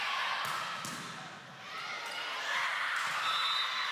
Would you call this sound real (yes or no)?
yes